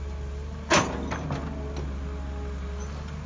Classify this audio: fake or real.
real